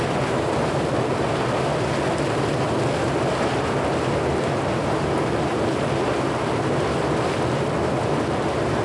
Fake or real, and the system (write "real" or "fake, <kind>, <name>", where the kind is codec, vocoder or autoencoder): real